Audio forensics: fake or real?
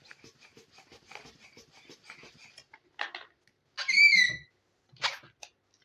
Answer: real